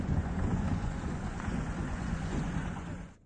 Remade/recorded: remade